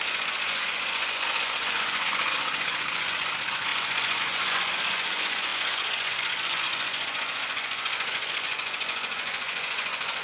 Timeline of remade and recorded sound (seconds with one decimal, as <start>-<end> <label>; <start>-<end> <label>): 0.0-10.2 remade